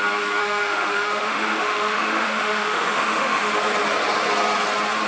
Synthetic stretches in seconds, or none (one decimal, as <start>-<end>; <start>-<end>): 0.4-3.5